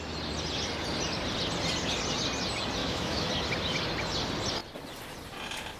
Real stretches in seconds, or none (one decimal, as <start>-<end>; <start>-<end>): 0.0-2.8; 3.3-5.8